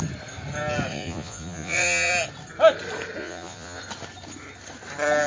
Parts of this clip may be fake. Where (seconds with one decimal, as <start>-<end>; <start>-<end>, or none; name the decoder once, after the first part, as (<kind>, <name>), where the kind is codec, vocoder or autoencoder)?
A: 0.9-2.1 (vocoder, Vocos); 3.2-3.8